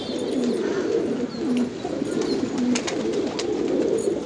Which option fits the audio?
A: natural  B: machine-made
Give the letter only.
A